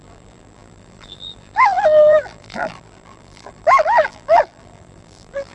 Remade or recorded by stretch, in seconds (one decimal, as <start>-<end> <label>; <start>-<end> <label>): 0.0-5.5 remade

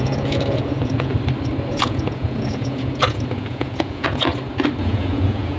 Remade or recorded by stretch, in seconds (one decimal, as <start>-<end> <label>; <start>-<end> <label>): 0.0-1.1 remade; 1.1-1.7 recorded; 1.7-4.3 remade; 4.3-4.8 recorded; 4.8-5.6 remade

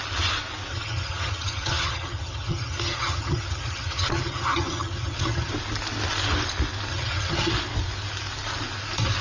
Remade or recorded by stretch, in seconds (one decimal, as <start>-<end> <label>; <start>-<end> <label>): 0.0-0.7 recorded; 0.7-5.5 remade; 5.5-6.9 recorded; 6.9-7.5 remade; 7.5-9.2 recorded

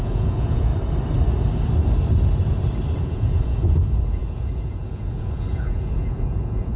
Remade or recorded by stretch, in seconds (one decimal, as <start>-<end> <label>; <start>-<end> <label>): 0.0-0.7 remade; 0.7-3.0 recorded; 3.0-6.8 remade